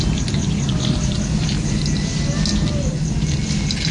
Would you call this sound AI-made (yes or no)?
no